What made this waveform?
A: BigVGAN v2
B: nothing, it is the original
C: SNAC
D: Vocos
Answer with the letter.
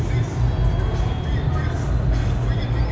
B